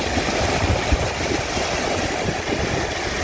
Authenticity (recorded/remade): recorded